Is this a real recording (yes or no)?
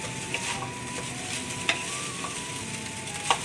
yes